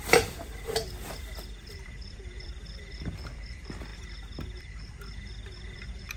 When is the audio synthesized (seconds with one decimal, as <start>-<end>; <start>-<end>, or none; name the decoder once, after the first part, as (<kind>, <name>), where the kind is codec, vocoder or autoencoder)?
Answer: 0.0-3.9 (vocoder, BigVGAN v2); 4.6-6.2